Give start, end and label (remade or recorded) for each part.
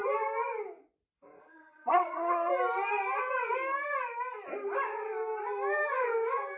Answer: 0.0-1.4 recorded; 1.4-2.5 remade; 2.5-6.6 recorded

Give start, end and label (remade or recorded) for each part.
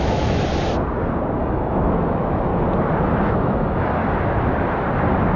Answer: 0.0-0.5 remade; 0.5-1.4 recorded; 1.4-2.5 remade; 2.5-3.2 recorded; 3.2-4.0 remade; 4.0-5.4 recorded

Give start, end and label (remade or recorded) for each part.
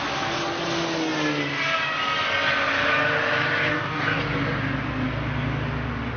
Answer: 0.0-3.7 recorded; 3.7-4.2 remade; 4.2-6.2 recorded